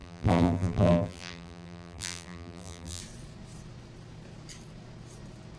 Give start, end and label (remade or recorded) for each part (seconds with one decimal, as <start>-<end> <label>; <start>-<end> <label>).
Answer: 0.0-3.0 remade; 3.0-5.6 recorded